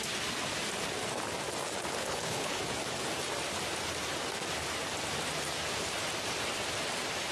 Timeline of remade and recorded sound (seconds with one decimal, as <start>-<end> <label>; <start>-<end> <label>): 0.0-2.0 recorded; 2.0-2.6 remade; 2.6-7.3 recorded